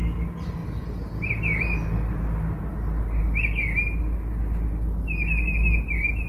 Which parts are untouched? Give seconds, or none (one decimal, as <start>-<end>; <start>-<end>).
0.0-6.3